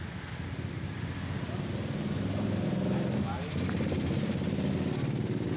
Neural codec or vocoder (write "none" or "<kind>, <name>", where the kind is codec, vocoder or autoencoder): none